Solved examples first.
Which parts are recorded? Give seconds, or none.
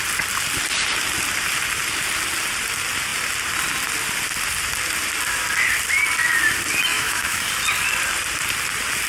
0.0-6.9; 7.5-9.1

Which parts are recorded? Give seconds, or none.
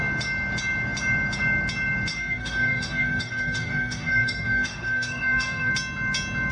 0.0-2.1; 5.7-6.5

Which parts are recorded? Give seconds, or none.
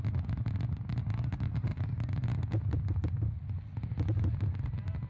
0.0-5.1